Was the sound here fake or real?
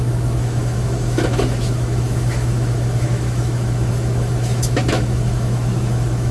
fake